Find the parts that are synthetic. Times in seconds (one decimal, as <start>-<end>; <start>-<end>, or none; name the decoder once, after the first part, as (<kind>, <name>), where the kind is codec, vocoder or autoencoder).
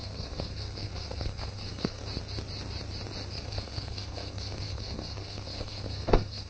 0.0-2.0 (codec, SNAC); 3.3-6.5